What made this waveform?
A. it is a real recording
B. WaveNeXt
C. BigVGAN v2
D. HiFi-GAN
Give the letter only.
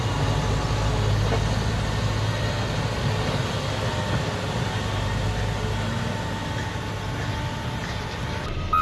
A